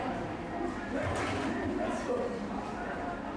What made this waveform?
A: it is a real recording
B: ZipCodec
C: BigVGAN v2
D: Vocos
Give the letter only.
C